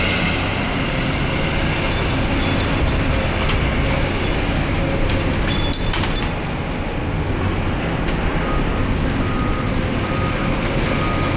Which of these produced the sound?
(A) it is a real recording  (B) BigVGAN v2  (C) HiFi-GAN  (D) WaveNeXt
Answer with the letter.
A